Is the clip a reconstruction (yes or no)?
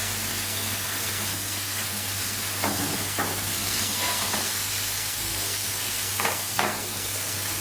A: yes